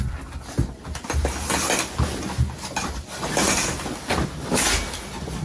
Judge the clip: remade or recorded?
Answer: recorded